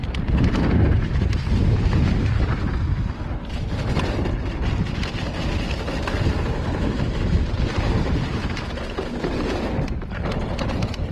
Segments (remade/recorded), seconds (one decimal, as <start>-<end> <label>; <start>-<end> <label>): 0.0-11.1 recorded